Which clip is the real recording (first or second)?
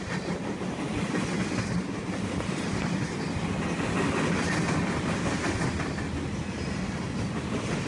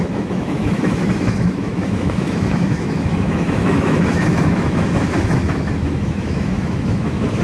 first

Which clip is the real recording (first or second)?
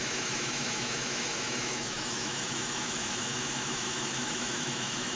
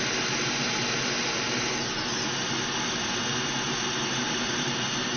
second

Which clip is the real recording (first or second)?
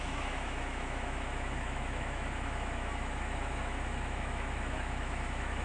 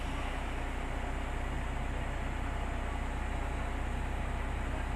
second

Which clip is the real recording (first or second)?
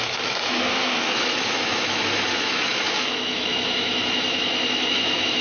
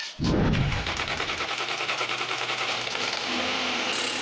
second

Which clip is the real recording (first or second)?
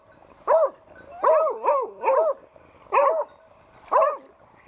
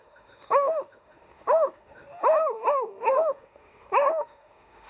first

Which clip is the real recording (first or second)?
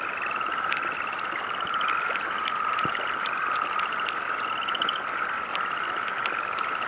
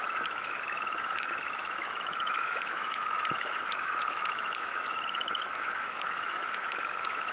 first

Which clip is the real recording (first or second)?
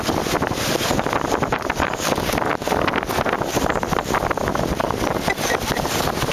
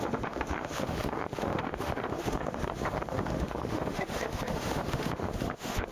first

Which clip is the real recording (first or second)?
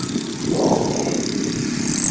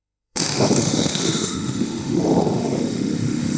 first